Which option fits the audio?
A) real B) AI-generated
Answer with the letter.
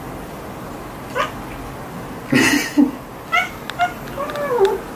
A